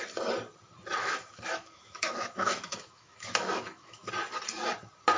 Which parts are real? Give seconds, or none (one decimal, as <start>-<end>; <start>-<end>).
0.0-1.0; 4.1-5.2